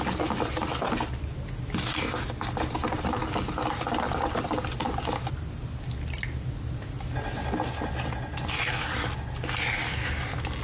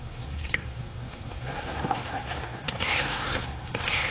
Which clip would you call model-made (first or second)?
second